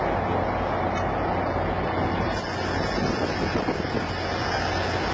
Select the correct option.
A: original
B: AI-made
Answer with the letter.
A